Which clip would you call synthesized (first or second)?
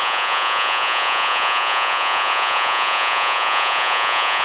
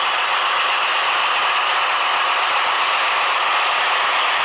first